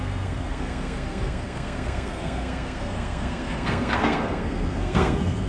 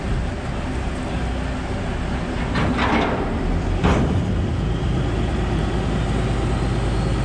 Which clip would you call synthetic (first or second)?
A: first